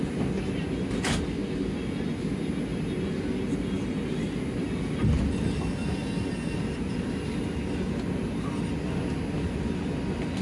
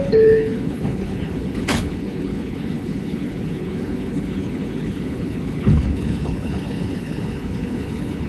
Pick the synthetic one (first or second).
second